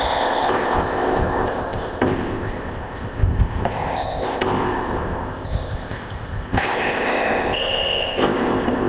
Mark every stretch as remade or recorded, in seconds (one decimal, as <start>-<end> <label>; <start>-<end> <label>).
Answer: 0.0-8.9 remade